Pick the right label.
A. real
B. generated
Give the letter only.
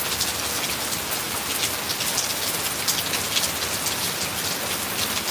A